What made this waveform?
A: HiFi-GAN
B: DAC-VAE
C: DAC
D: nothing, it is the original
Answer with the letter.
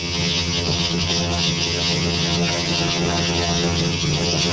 A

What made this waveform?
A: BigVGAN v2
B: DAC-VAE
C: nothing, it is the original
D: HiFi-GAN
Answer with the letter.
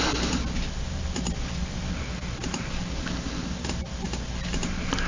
C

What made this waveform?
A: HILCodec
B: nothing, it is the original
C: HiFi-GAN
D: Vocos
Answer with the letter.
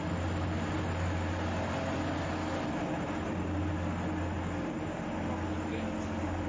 B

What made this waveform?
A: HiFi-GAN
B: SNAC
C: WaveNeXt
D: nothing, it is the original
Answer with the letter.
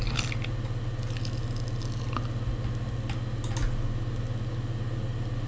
D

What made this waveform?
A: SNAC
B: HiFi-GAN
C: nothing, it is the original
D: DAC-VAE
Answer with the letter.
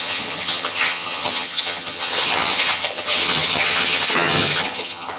B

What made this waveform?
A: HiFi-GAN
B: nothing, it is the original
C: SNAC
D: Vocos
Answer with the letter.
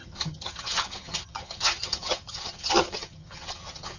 A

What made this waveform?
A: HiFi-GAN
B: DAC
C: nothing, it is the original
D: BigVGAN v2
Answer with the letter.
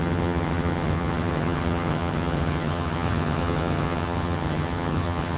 A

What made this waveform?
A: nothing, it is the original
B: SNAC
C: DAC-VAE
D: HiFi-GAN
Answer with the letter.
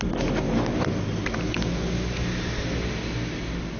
A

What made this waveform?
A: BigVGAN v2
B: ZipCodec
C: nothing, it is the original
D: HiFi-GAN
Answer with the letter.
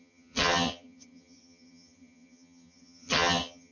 D